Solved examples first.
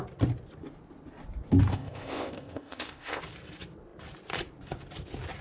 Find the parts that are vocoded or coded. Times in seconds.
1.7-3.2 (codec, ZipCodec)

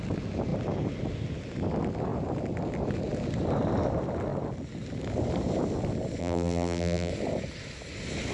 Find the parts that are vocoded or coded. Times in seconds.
6.2-7.1 (vocoder, BigVGAN v2)

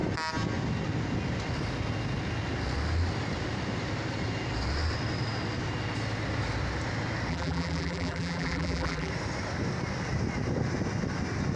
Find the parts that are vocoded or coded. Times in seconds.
7.3-9.1 (vocoder, BigVGAN v2)

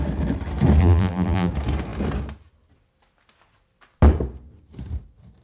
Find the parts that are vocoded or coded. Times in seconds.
0.8-1.5 (vocoder, BigVGAN v2)

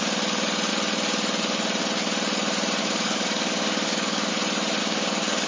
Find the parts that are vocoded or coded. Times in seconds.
2.8-4.3 (codec, DAC); 4.8-5.5